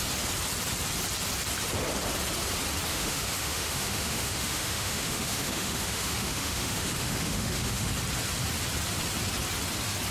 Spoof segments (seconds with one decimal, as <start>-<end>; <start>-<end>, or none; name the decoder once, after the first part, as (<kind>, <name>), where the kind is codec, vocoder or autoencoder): 2.9-7.9 (autoencoder, DAC-VAE)